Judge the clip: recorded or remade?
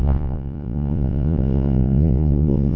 remade